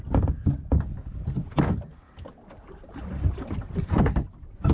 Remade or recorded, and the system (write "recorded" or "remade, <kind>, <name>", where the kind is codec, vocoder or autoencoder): recorded